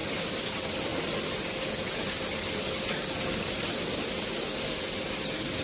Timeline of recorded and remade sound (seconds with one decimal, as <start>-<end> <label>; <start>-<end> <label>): 0.0-5.6 recorded